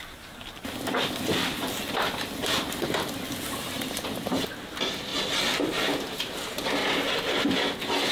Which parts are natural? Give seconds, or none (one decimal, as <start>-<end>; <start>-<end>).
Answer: 0.0-8.1